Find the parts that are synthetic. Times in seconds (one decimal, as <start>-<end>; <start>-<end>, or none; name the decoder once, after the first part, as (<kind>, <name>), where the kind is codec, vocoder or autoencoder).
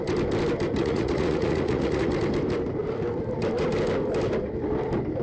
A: 0.8-2.1 (vocoder, Vocos)